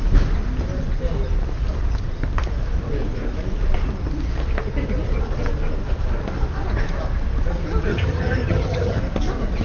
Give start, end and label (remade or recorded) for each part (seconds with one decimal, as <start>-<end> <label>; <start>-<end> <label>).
0.0-7.9 recorded; 7.9-9.0 remade; 9.0-9.6 recorded